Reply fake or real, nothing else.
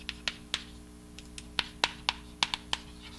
real